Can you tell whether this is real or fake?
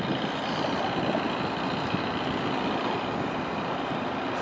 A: real